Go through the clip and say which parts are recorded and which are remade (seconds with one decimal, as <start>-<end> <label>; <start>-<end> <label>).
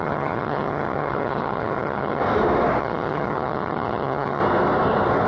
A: 0.0-2.2 remade; 2.2-2.8 recorded; 2.8-4.4 remade; 4.4-5.3 recorded